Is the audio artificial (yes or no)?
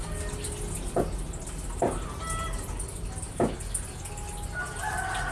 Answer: no